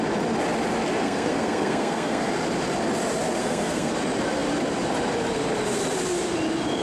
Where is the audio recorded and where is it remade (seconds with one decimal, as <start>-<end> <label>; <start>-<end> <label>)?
0.0-1.0 recorded; 1.0-2.3 remade; 2.3-3.4 recorded; 3.4-3.9 remade; 3.9-6.8 recorded